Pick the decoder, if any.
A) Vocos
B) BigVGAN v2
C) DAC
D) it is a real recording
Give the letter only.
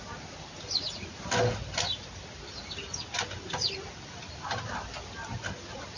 D